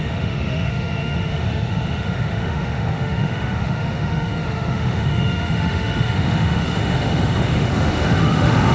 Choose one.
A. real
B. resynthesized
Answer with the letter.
B